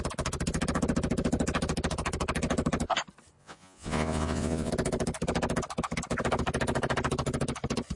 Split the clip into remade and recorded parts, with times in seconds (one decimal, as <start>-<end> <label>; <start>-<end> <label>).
0.0-3.4 recorded; 3.4-4.7 remade; 4.7-8.0 recorded